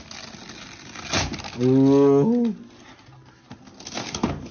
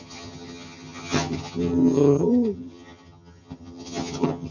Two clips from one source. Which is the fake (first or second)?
second